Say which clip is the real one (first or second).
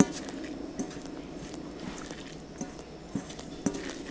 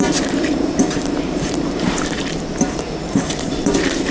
first